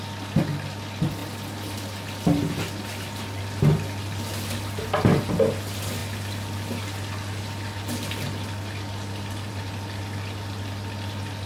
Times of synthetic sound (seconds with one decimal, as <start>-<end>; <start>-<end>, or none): none